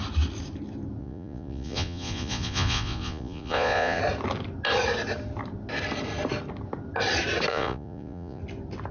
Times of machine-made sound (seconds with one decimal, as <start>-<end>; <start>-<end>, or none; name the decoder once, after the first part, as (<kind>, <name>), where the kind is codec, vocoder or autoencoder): 1.0-4.0 (vocoder, Vocos); 7.5-8.4

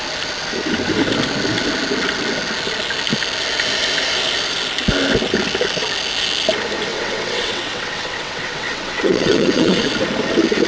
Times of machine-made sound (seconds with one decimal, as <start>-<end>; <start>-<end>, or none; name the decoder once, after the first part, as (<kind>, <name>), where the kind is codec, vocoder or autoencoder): 6.9-9.9 (vocoder, WaveNeXt)